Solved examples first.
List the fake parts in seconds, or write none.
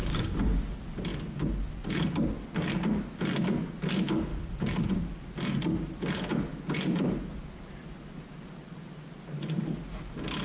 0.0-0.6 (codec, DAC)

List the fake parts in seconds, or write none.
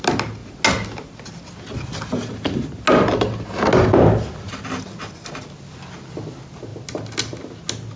none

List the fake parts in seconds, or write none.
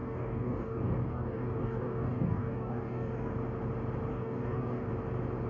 0.0-3.3 (codec, DAC); 4.1-4.9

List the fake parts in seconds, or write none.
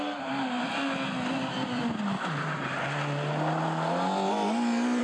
none